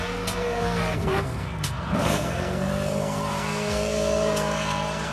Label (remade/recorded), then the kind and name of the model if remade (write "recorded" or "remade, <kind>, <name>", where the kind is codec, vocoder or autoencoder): remade, codec, SNAC